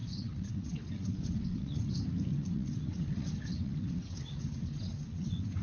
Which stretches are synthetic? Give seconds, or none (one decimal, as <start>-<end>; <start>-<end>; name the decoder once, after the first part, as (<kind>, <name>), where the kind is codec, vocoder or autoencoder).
0.0-1.9 (vocoder, WaveNeXt); 2.3-5.6